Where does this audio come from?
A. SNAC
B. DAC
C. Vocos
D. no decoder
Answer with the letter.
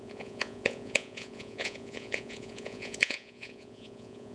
C